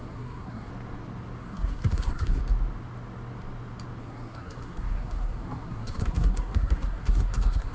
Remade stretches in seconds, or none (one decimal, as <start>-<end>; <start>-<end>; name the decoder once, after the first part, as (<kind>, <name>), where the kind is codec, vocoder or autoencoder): 0.0-0.7 (codec, SNAC); 1.4-2.4; 4.0-7.7